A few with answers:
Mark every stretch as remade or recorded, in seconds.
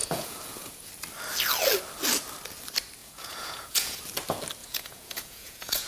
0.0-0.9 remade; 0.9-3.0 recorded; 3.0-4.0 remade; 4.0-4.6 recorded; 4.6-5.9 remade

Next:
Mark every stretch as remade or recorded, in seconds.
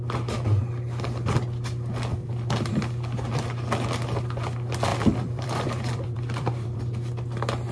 0.0-2.2 recorded; 2.2-2.8 remade; 2.8-4.9 recorded; 4.9-6.8 remade; 6.8-7.7 recorded